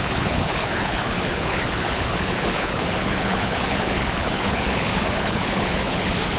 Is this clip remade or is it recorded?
remade